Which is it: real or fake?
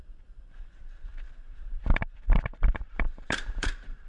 fake